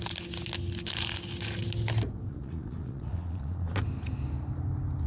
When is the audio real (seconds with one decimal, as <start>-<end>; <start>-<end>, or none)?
0.0-2.3; 3.8-5.1